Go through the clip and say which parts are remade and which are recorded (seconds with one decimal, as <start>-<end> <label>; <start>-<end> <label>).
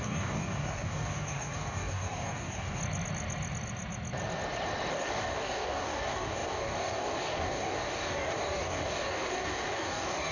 0.0-2.8 remade; 2.8-4.9 recorded; 4.9-10.3 remade